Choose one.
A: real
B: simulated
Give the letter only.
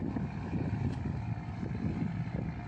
A